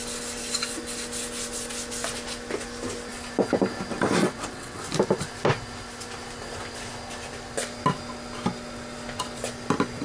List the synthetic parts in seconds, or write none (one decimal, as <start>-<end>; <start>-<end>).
4.2-4.8

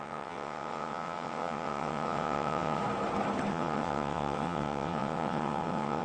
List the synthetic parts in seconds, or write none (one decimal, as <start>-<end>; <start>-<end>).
0.0-2.8; 3.5-6.0

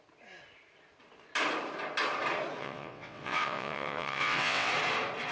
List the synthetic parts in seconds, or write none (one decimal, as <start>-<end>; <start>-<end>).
2.6-4.7

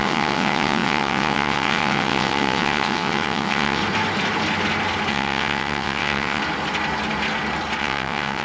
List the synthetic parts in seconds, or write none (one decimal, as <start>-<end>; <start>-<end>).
0.0-3.8; 5.1-6.4; 7.8-8.4

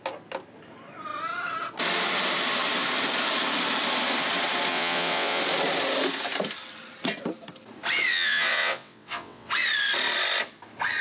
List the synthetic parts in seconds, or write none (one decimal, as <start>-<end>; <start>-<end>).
4.7-5.4; 8.1-9.5

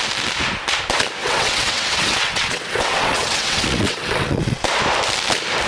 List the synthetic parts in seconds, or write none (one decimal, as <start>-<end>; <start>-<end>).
1.2-4.6

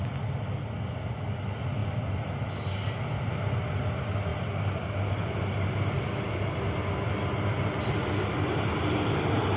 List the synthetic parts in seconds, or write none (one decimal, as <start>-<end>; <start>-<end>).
none